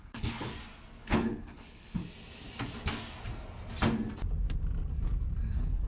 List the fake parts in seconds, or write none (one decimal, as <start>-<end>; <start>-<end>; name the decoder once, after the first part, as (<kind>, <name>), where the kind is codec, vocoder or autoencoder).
0.0-0.5 (codec, HILCodec); 1.0-2.0; 5.5-5.9